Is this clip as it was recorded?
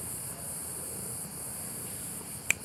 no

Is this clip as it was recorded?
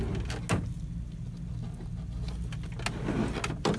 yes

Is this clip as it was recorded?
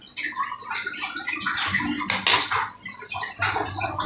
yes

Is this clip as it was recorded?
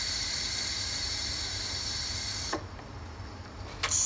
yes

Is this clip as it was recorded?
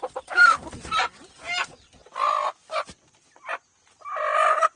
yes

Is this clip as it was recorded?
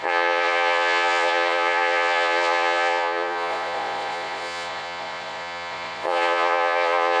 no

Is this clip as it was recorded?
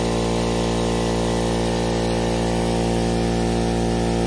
yes